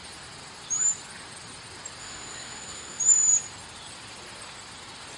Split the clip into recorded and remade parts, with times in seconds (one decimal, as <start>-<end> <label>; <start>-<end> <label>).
0.0-2.0 recorded; 2.0-3.0 remade; 3.0-5.2 recorded